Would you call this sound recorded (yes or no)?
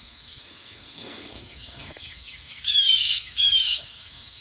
no